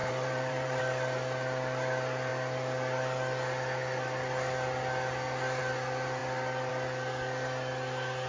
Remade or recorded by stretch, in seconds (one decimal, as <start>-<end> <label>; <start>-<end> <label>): 0.0-0.8 remade; 0.8-8.3 recorded